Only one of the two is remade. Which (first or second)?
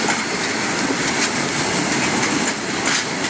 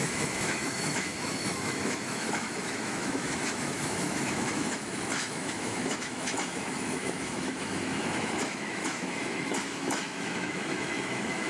second